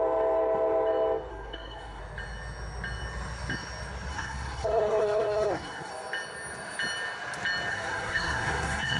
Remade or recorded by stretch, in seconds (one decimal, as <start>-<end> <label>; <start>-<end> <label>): 0.0-1.3 recorded; 1.3-2.0 remade; 2.0-4.1 recorded; 4.1-5.9 remade; 5.9-7.7 recorded; 7.7-9.0 remade